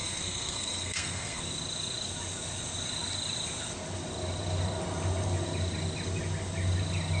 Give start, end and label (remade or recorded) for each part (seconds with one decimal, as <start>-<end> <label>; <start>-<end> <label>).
0.0-1.4 remade; 1.4-7.2 recorded